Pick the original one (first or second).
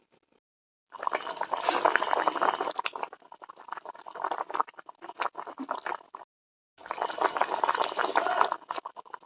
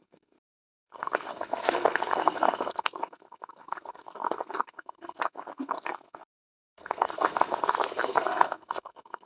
first